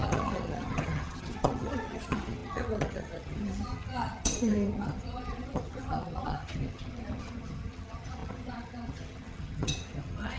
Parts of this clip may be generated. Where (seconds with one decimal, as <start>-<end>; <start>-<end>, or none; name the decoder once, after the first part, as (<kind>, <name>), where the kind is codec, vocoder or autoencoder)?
0.0-10.4 (vocoder, HiFi-GAN)